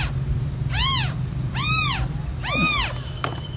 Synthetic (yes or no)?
no